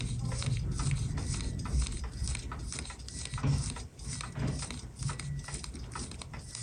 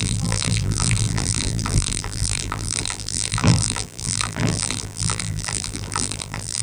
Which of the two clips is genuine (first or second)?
first